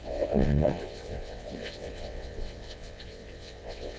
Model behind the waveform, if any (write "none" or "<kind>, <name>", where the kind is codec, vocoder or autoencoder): vocoder, WaveNeXt